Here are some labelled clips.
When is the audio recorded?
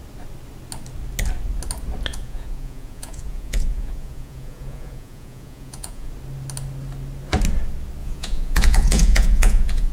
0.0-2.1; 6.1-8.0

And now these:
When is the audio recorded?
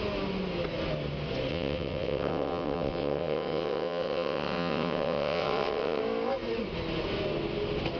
0.0-1.5; 6.0-8.0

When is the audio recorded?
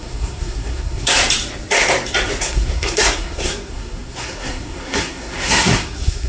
1.2-2.4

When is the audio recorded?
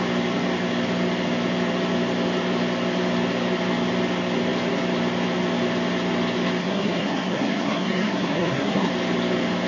0.0-6.6; 8.9-9.7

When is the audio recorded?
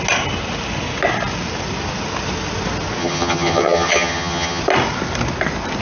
0.0-3.0; 4.6-5.8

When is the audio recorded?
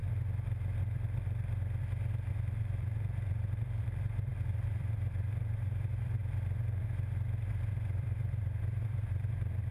0.0-2.3; 6.2-7.5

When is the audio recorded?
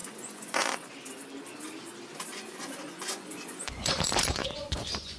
0.9-2.3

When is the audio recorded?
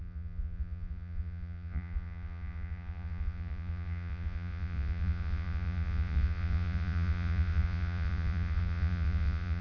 none